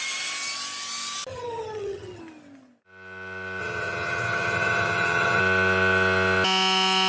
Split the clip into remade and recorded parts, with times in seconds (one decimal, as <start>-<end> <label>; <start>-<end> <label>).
0.0-1.3 recorded; 1.3-2.2 remade; 2.2-3.6 recorded; 3.6-5.4 remade; 5.4-7.1 recorded

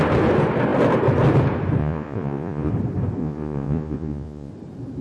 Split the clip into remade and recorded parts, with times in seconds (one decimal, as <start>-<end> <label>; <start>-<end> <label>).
0.0-1.8 recorded; 1.8-2.7 remade; 2.7-3.2 recorded; 3.2-4.5 remade; 4.5-5.0 recorded

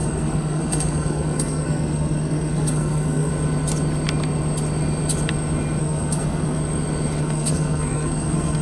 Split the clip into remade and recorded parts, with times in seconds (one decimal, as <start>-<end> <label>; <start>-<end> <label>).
0.0-3.3 remade; 3.3-5.8 recorded; 5.8-6.6 remade; 6.6-7.2 recorded; 7.2-8.6 remade

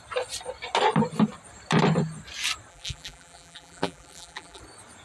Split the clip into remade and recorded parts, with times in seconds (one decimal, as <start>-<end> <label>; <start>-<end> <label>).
0.0-2.7 recorded; 2.7-4.6 remade; 4.6-5.0 recorded

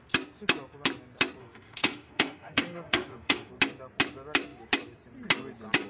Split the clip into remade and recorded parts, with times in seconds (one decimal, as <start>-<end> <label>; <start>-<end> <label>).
0.0-1.4 recorded; 1.4-3.5 remade; 3.5-5.9 recorded

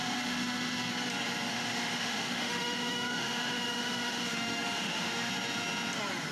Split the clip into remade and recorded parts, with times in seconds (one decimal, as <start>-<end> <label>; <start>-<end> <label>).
0.0-0.9 remade; 0.9-1.5 recorded; 1.5-5.3 remade; 5.3-6.3 recorded

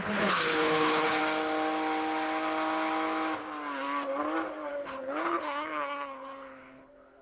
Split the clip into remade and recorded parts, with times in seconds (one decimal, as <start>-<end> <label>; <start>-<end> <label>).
0.0-1.2 remade; 1.2-4.7 recorded; 4.7-7.2 remade

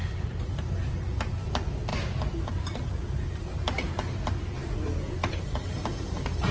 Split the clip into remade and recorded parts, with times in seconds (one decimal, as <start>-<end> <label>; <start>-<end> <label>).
0.0-1.9 remade; 1.9-2.4 recorded; 2.4-6.5 remade